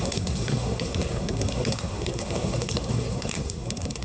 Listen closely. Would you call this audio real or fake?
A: fake